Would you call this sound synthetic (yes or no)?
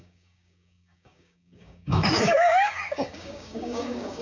yes